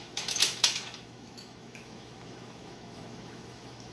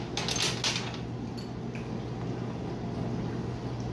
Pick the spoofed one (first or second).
first